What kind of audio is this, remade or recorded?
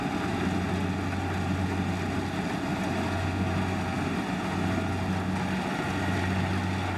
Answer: recorded